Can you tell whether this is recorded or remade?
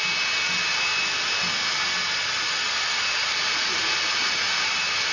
recorded